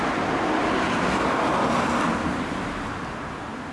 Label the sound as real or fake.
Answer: real